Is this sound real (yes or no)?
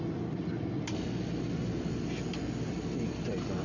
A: yes